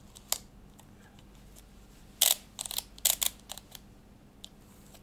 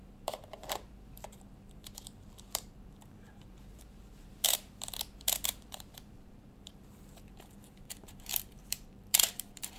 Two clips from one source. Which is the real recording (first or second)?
first